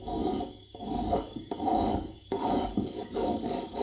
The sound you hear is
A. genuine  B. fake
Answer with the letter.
B